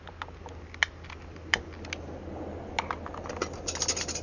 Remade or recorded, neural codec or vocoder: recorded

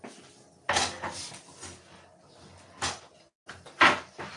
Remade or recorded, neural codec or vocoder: recorded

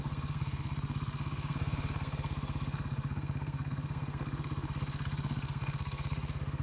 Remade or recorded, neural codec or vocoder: remade, codec, SNAC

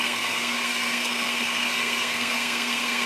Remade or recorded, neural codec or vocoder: remade, codec, SNAC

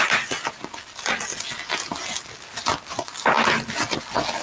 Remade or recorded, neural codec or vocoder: recorded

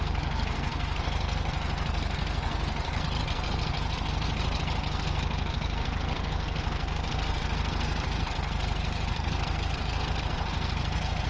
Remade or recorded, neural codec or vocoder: remade, codec, SNAC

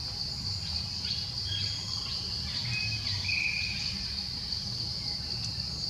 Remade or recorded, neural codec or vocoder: recorded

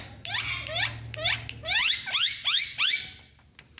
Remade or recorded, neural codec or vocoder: recorded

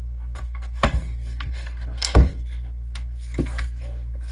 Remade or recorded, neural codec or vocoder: remade, codec, SNAC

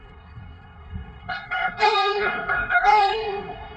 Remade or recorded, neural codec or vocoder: remade, codec, SNAC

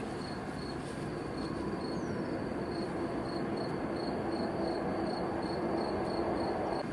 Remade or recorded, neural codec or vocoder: recorded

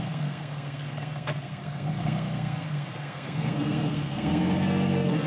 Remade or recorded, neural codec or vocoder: remade, codec, SNAC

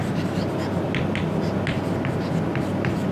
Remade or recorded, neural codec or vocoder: recorded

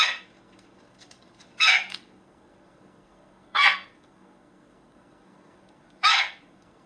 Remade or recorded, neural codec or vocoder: remade, codec, SNAC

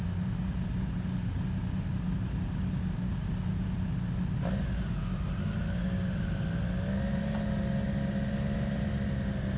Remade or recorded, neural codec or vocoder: recorded